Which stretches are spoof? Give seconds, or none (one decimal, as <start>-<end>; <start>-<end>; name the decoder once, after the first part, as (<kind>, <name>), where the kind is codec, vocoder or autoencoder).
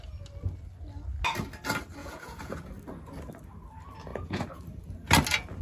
2.0-2.7 (vocoder, Vocos); 4.1-4.6